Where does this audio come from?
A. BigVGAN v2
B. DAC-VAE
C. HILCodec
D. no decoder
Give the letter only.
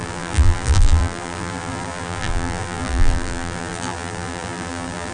A